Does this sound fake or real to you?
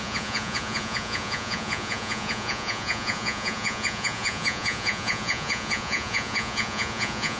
fake